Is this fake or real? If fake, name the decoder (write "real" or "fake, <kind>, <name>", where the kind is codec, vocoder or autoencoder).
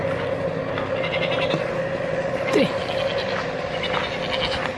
real